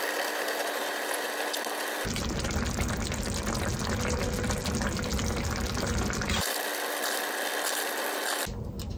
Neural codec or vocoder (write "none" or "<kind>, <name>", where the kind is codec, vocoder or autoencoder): none